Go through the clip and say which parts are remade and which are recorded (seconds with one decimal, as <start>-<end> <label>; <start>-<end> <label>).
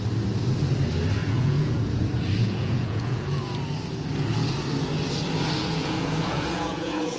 0.0-1.2 recorded; 1.2-2.0 remade; 2.0-2.4 recorded; 2.4-3.4 remade; 3.4-5.6 recorded; 5.6-7.2 remade